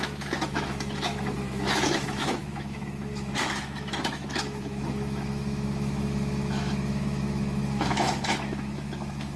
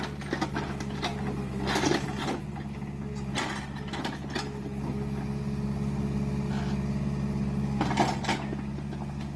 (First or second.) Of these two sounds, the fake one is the first